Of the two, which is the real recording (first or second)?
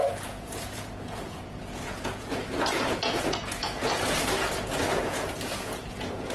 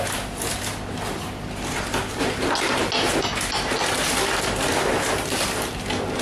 second